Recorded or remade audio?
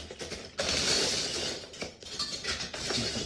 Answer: remade